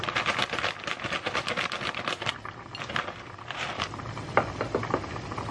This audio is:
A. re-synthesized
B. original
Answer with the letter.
B